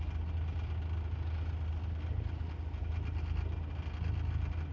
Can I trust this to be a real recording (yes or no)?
yes